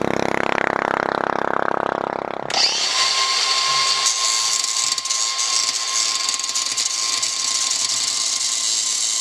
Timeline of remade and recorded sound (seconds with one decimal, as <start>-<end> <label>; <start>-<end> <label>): 0.0-9.2 recorded